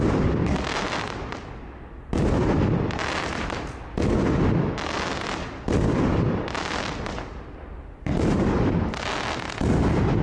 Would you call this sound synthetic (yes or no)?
no